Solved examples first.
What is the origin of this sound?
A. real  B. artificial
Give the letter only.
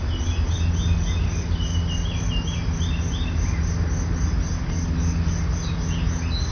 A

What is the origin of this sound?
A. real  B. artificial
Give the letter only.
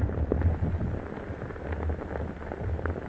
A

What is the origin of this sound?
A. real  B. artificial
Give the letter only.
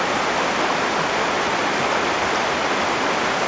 A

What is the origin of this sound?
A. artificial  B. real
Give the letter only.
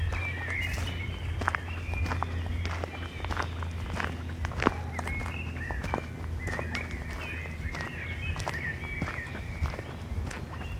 B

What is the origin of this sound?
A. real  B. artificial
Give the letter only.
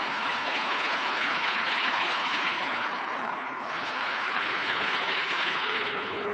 B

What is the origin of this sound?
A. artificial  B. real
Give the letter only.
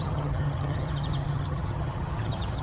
A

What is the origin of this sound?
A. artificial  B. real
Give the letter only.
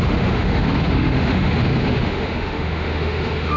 A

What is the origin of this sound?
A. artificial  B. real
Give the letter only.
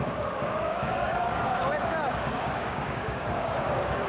A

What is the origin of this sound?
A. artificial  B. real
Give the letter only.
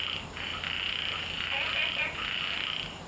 B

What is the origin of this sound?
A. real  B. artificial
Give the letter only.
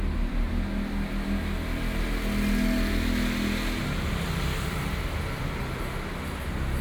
A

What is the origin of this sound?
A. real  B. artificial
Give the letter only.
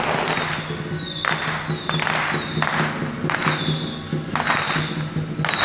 A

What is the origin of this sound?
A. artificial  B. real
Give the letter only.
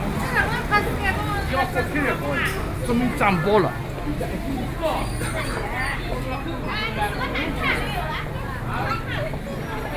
B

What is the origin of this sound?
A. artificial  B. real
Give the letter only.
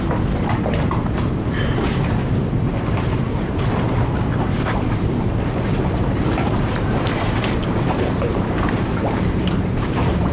A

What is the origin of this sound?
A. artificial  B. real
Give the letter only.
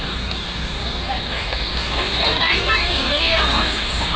A